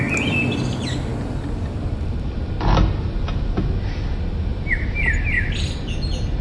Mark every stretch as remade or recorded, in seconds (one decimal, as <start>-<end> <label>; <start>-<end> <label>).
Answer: 0.0-6.4 recorded